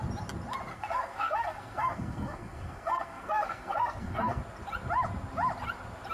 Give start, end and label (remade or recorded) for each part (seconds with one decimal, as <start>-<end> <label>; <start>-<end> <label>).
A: 0.0-0.7 recorded; 0.7-4.4 remade; 4.4-6.1 recorded